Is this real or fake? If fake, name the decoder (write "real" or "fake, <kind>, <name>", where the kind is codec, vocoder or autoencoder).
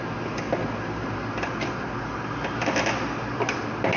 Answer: real